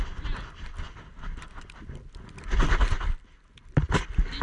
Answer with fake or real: real